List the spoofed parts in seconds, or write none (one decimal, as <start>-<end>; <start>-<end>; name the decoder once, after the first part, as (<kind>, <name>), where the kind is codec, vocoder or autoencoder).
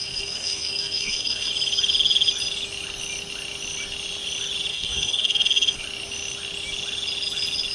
0.0-1.5 (codec, SNAC); 4.7-5.8